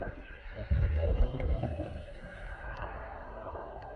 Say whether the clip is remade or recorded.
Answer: remade